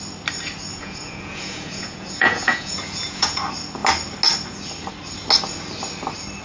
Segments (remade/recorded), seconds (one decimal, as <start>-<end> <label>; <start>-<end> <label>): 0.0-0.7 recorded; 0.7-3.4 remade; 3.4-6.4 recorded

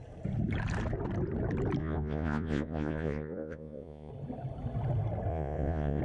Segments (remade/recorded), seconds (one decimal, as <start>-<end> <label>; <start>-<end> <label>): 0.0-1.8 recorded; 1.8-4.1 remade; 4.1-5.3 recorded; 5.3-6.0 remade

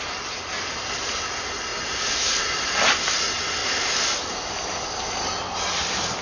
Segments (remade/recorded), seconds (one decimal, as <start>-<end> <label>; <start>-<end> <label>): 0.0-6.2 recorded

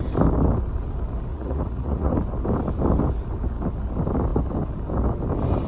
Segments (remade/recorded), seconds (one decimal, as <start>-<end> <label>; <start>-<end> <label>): 0.0-1.3 recorded; 1.3-2.1 remade; 2.1-5.7 recorded